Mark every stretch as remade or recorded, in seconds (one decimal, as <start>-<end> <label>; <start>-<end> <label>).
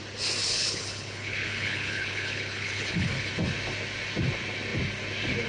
0.0-0.4 recorded; 0.4-3.3 remade; 3.3-5.5 recorded